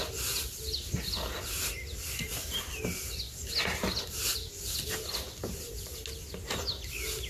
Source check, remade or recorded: recorded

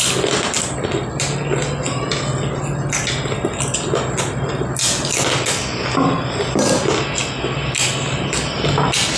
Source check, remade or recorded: recorded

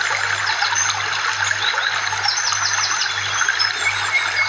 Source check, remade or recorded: recorded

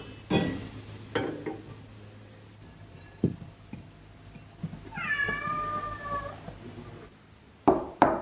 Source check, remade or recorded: recorded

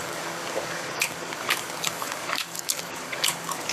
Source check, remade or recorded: remade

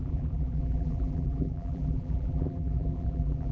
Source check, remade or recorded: remade